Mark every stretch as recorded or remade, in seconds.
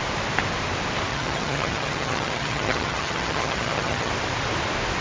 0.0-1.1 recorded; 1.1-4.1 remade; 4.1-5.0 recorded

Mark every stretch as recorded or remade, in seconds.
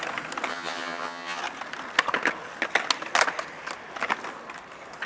0.0-0.5 recorded; 0.5-1.4 remade; 1.4-5.1 recorded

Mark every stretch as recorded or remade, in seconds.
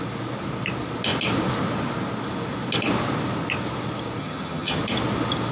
0.0-4.2 recorded; 4.2-4.8 remade; 4.8-5.5 recorded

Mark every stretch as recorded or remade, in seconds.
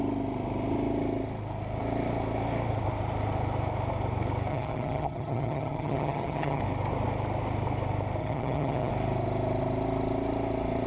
0.0-4.5 recorded; 4.5-6.6 remade; 6.6-8.2 recorded; 8.2-8.9 remade; 8.9-10.9 recorded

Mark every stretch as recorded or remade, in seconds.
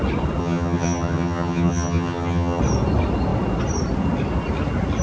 0.0-0.4 recorded; 0.4-2.6 remade; 2.6-5.0 recorded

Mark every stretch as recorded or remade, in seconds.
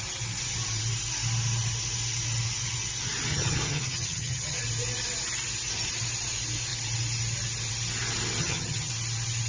0.0-3.3 recorded; 3.3-4.6 remade; 4.6-8.4 recorded; 8.4-8.9 remade; 8.9-9.5 recorded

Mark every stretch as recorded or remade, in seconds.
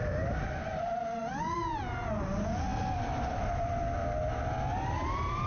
0.0-5.5 recorded